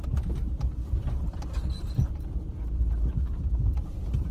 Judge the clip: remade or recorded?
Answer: remade